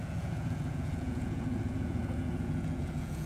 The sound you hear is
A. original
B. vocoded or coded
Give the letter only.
B